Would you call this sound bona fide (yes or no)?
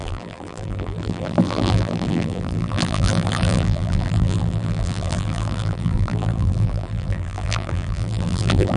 no